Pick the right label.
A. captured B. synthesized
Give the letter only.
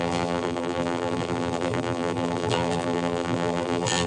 B